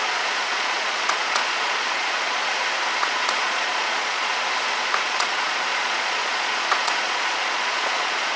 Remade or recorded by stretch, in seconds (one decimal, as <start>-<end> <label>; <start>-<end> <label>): 0.0-2.5 remade; 2.5-3.0 recorded; 3.0-4.3 remade; 4.3-5.0 recorded; 5.0-8.4 remade